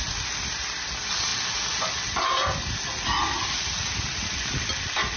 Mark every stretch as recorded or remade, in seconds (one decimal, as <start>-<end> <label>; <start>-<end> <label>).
0.0-5.2 recorded